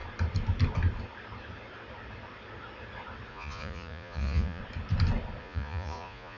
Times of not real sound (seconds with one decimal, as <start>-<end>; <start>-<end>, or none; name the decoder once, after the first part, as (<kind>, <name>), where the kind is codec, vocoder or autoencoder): 3.3-4.6 (vocoder, Vocos); 5.4-6.4